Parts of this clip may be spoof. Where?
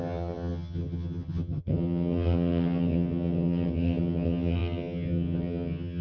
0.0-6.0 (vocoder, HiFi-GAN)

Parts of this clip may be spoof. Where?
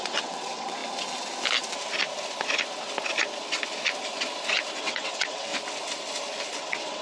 0.0-0.8 (vocoder, WaveNeXt); 4.8-5.5; 6.6-7.0